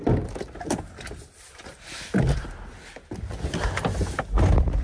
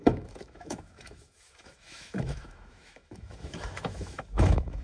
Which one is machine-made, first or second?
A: second